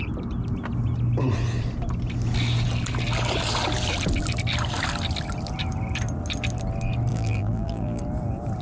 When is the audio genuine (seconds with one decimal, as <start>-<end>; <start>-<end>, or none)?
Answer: 0.0-7.1; 8.0-8.6

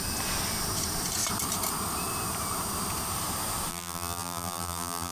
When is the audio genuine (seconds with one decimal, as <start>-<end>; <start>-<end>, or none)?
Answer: 0.0-3.7

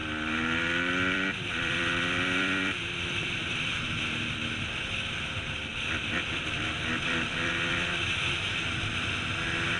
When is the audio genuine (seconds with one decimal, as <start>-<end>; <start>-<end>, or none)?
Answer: 3.6-5.7; 7.5-9.8

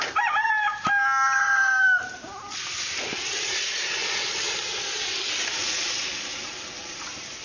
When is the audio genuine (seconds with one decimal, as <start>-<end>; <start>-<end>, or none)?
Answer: 0.0-1.6; 2.9-7.4

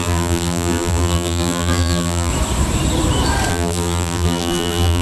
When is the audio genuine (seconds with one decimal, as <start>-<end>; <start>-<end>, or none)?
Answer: 2.3-3.5

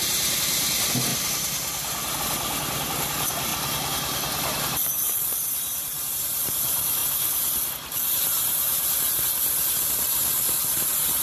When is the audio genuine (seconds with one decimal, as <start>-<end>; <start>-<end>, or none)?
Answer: 1.1-2.2; 7.0-7.7